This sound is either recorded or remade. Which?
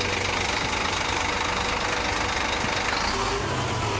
recorded